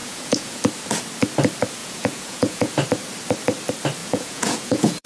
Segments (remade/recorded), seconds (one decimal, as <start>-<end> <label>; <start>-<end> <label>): 0.0-0.6 remade; 0.6-1.8 recorded; 1.8-2.7 remade; 2.7-4.0 recorded; 4.0-5.1 remade